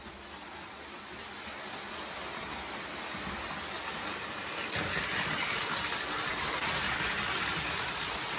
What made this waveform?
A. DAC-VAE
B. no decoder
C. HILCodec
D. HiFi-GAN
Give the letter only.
B